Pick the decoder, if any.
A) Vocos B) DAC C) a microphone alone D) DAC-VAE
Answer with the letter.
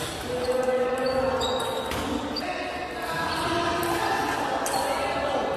C